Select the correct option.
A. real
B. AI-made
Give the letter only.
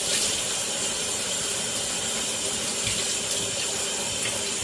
A